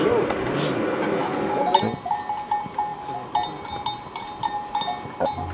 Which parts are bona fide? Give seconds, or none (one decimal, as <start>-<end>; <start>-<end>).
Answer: 0.0-5.5